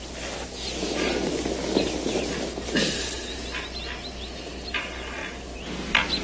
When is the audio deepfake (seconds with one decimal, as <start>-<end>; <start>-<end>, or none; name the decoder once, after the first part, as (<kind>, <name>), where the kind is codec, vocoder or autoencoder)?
none